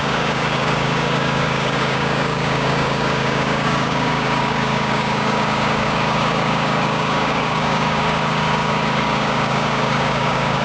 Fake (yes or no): yes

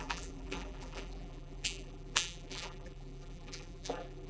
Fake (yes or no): yes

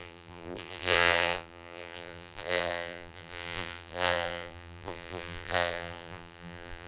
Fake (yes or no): yes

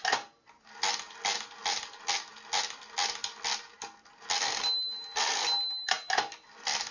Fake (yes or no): no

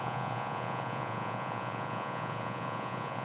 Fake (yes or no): yes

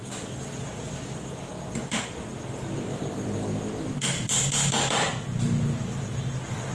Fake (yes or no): no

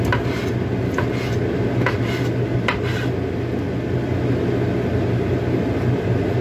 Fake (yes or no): no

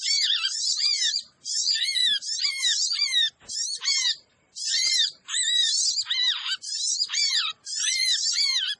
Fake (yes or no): yes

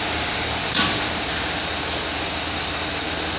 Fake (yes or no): no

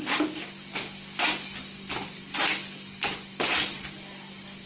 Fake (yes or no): no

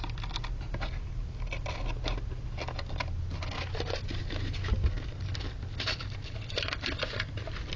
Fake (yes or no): no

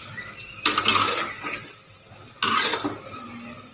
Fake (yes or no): no